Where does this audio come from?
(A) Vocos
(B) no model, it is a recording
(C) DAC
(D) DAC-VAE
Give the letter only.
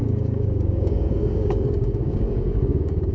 C